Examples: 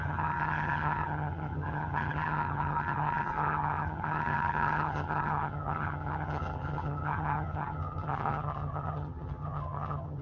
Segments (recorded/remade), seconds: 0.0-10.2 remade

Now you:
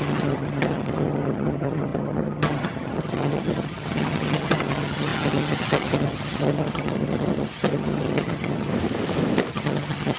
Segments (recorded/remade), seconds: 0.0-8.7 remade; 8.7-9.5 recorded; 9.5-10.2 remade

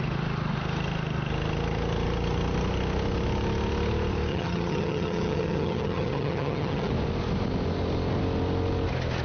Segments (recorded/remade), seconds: 0.0-4.3 recorded; 4.3-6.9 remade; 6.9-9.2 recorded